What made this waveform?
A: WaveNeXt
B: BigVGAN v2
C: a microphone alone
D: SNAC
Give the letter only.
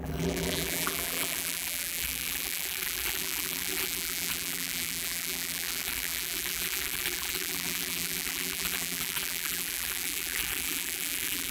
B